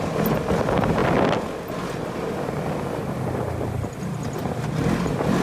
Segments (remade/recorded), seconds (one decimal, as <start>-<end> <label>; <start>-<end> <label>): 0.0-5.4 recorded